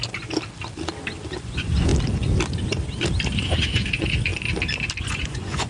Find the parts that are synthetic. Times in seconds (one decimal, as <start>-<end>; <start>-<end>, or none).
1.4-1.9; 3.4-4.3; 5.0-5.7